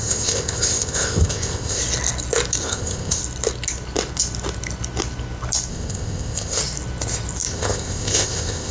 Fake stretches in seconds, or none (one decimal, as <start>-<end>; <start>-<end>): 0.0-1.8; 2.6-3.2; 5.7-6.6; 7.5-8.7